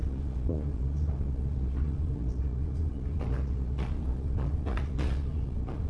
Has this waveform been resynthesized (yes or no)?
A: yes